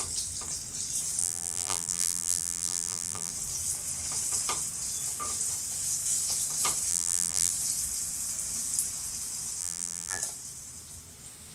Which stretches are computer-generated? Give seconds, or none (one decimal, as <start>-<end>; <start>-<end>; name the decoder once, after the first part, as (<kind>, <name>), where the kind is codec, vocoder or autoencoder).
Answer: 1.2-3.3 (vocoder, BigVGAN v2); 6.9-7.5; 9.6-10.2